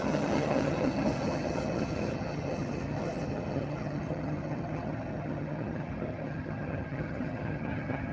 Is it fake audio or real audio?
fake